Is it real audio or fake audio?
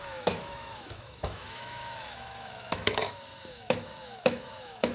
fake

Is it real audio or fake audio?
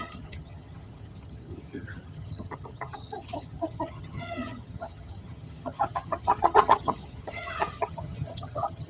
fake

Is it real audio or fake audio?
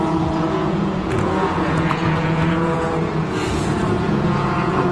fake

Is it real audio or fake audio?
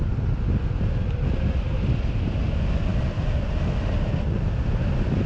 real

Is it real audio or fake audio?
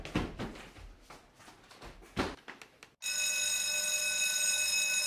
real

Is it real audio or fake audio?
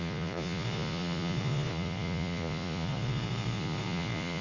fake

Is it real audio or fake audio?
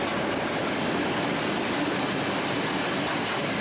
real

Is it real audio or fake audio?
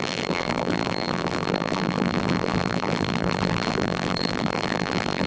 fake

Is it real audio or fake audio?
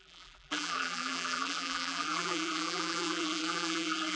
fake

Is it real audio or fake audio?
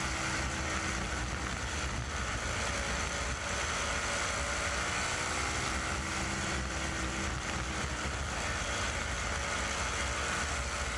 real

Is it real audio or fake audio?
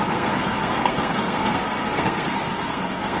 fake